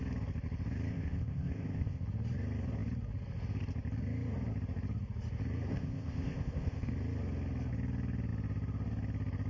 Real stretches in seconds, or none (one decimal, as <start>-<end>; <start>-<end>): 0.0-0.9; 2.0-5.7; 6.9-9.5